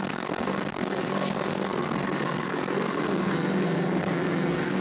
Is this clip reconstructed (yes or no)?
yes